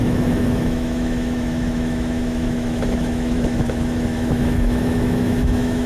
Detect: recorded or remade remade